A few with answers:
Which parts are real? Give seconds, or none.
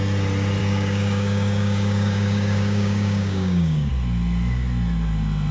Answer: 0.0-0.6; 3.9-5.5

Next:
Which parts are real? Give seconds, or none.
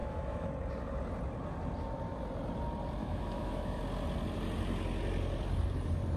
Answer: 0.5-3.0; 3.8-6.2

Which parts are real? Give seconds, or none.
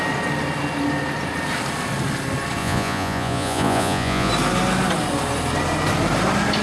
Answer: 0.0-2.6; 4.3-6.6